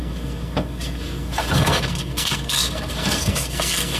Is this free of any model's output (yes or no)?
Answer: no